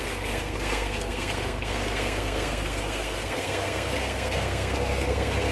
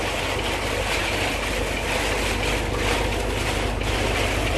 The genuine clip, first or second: second